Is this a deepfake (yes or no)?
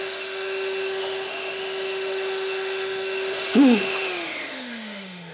yes